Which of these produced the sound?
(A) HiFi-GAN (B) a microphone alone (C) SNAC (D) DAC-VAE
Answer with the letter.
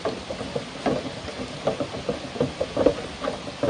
B